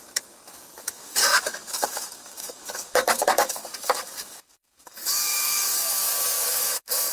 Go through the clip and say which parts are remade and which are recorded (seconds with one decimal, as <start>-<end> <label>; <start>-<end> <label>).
0.0-7.1 remade